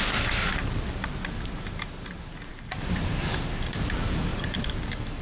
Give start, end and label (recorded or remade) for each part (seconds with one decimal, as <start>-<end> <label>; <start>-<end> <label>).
0.0-1.2 remade; 1.2-2.5 recorded; 2.5-5.2 remade